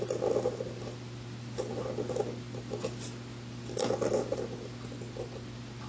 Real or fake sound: real